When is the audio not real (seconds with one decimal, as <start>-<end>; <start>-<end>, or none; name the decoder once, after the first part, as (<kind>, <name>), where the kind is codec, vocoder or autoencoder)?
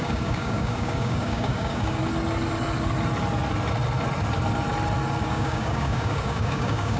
0.0-2.0 (codec, DAC); 5.2-7.0